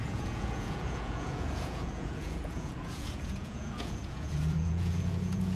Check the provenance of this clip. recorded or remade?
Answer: remade